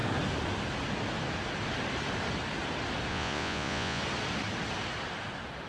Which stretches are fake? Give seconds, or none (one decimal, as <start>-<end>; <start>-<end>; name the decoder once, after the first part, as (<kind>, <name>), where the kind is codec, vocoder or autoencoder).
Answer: 3.1-4.0 (vocoder, Vocos)